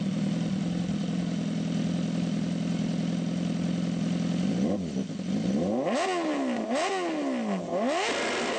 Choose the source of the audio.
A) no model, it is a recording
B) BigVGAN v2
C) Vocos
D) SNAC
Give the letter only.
A